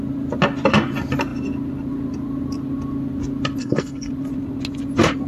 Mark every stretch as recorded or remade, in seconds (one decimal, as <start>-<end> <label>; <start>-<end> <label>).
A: 0.0-3.6 recorded; 3.6-4.1 remade; 4.1-5.3 recorded